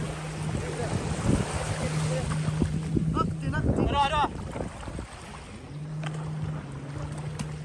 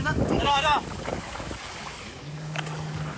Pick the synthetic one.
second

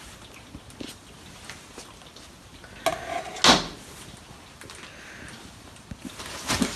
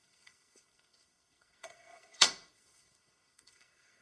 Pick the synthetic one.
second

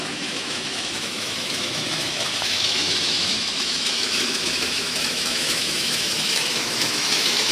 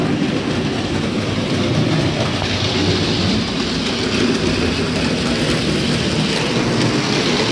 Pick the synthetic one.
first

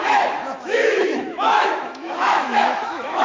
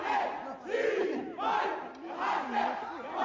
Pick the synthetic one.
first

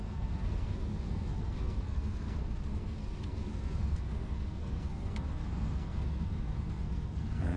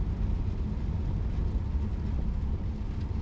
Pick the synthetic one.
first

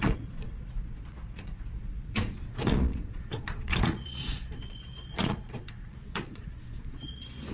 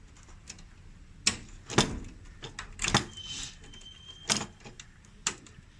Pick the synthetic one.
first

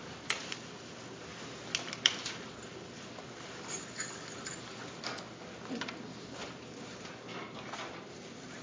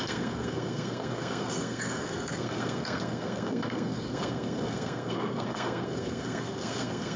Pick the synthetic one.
second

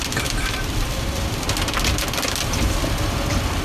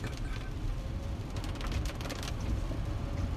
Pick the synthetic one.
first